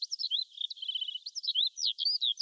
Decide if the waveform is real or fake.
real